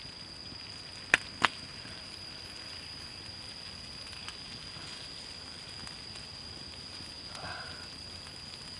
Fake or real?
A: real